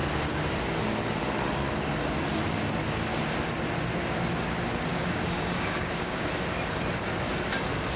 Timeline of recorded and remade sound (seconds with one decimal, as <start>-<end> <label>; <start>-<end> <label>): 0.0-4.9 recorded; 4.9-6.3 remade; 6.3-8.0 recorded